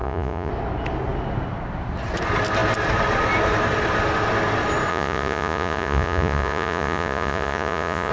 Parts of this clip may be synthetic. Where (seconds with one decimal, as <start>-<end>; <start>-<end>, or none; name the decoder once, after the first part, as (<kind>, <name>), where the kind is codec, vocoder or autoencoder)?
0.0-0.5 (vocoder, Vocos); 4.9-8.1